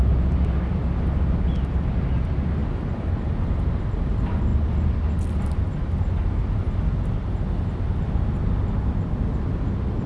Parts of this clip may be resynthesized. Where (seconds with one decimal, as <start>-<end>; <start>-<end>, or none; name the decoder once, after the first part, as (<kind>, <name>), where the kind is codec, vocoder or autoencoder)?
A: 0.7-4.5 (vocoder, BigVGAN v2)